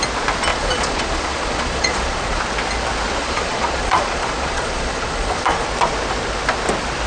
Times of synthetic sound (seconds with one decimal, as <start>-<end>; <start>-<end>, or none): 0.5-2.4; 3.2-5.7